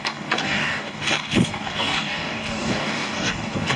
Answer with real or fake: fake